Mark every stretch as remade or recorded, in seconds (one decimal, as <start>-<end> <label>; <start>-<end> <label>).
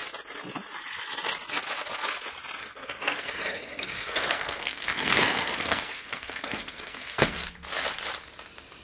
0.0-2.6 recorded; 2.6-7.5 remade; 7.5-8.8 recorded